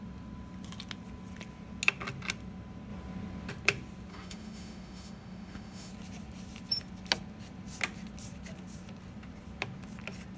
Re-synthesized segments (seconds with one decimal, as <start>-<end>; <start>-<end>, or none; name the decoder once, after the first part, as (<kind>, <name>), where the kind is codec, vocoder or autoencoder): 4.1-5.9 (autoencoder, DAC-VAE)